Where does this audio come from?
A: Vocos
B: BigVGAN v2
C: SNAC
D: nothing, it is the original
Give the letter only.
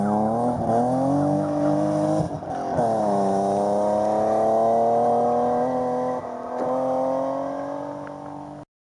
D